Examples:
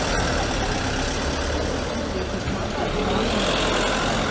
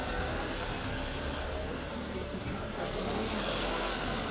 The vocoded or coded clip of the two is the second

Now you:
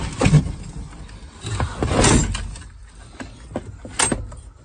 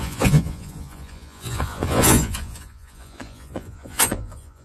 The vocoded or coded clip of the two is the second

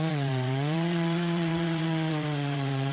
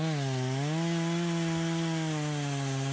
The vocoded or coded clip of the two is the first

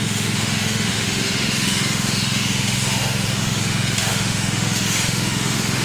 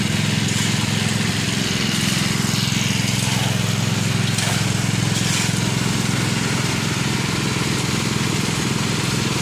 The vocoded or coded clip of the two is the first